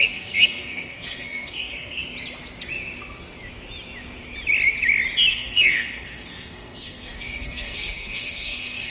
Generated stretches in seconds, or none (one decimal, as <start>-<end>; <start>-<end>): 0.0-2.0; 5.3-8.9